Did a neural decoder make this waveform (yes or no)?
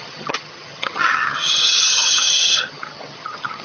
yes